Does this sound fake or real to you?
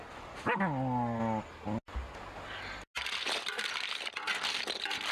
real